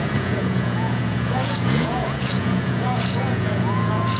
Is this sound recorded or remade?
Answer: remade